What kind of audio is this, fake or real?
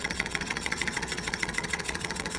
fake